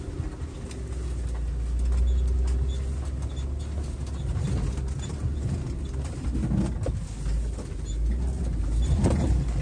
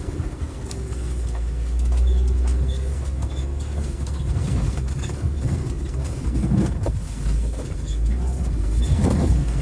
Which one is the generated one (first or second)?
second